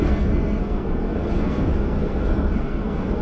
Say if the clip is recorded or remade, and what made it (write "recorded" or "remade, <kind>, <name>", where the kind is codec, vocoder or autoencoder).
remade, codec, SNAC